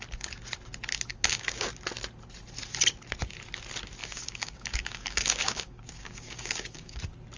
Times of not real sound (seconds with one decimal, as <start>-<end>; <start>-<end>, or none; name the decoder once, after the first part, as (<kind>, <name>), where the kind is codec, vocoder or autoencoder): 1.1-1.7 (codec, DAC); 4.0-7.0